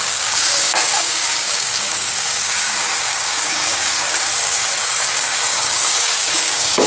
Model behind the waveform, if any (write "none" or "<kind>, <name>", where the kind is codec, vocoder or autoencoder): codec, DAC